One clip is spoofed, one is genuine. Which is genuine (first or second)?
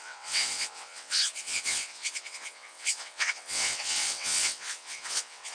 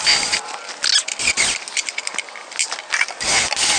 second